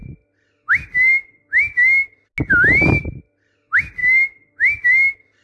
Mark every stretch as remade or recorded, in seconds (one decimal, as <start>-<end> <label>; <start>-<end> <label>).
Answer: 0.0-5.4 recorded